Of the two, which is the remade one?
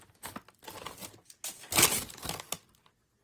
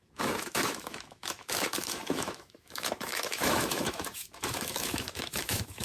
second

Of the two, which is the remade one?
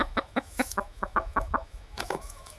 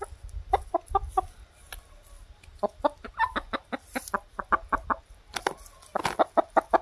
first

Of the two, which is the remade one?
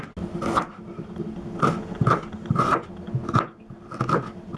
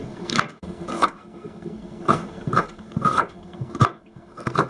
second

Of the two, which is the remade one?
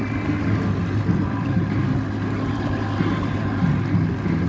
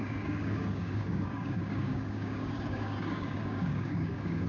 second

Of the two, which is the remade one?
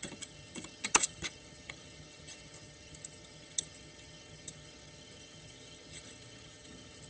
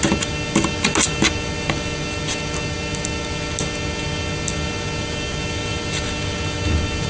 first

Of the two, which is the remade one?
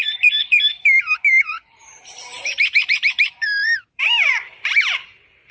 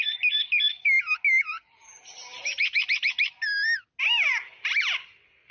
first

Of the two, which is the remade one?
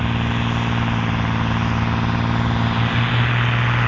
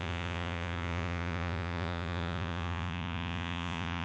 second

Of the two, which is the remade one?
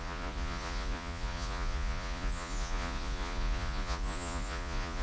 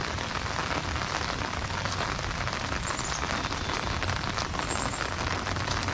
first